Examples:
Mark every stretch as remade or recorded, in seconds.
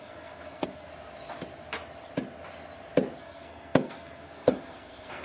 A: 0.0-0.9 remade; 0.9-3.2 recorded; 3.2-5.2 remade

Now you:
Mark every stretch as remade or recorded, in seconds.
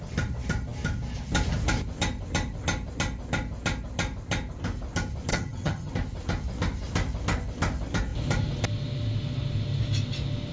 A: 0.0-5.3 recorded; 5.3-5.9 remade; 5.9-10.5 recorded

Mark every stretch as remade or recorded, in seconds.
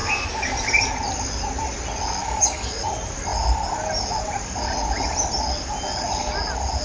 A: 0.0-2.2 recorded; 2.2-2.8 remade; 2.8-6.8 recorded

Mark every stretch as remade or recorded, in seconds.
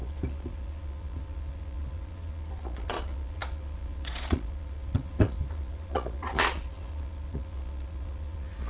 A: 0.0-8.7 remade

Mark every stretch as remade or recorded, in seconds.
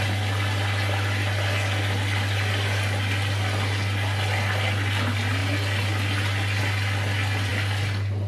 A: 0.0-8.3 recorded